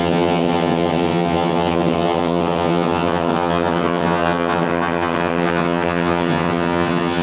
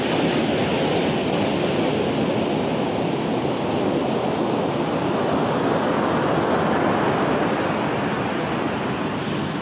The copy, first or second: first